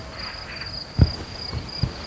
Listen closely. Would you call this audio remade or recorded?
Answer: recorded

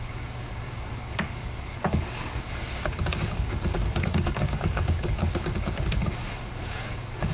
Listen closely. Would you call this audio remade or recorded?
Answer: remade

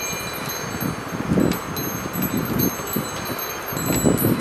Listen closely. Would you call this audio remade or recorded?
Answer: recorded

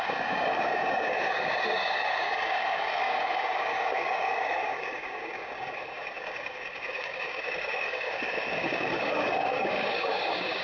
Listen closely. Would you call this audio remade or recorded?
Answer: remade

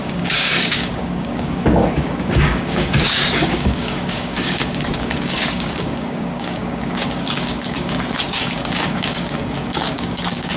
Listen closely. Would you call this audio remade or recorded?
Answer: remade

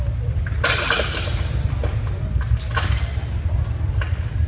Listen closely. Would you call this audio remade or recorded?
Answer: recorded